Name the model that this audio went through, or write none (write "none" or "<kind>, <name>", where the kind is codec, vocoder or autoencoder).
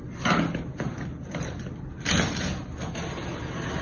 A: none